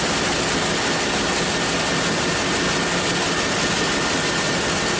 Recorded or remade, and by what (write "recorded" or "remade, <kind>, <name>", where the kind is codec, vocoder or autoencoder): recorded